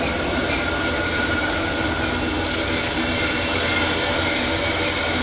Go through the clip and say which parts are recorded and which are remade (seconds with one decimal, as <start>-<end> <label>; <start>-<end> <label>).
0.0-5.2 recorded